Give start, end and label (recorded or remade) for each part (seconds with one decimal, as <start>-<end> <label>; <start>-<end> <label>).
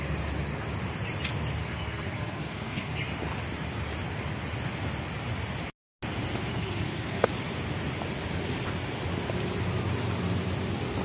0.0-1.6 recorded; 1.6-2.9 remade; 2.9-6.5 recorded; 6.5-7.3 remade; 7.3-11.0 recorded